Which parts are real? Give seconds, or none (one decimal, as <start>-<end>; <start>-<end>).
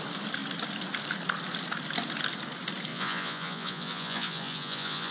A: 0.0-2.9